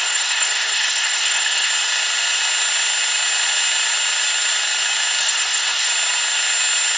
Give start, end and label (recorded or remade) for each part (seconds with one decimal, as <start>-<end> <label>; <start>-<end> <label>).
0.0-1.7 remade; 1.7-5.2 recorded; 5.2-5.9 remade; 5.9-7.0 recorded